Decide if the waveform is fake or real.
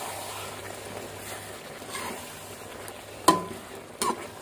real